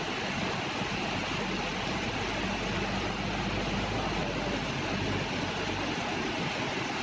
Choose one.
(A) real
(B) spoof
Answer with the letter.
A